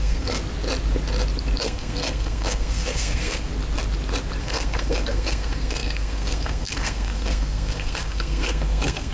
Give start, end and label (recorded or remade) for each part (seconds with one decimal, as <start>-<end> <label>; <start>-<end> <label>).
0.0-0.4 remade; 0.4-1.6 recorded; 1.6-3.5 remade; 3.5-4.4 recorded; 4.4-9.1 remade